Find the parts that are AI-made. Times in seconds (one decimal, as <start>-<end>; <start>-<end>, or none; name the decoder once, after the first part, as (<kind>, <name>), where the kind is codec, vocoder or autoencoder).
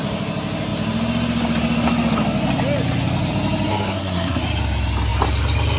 3.7-4.4 (codec, SNAC)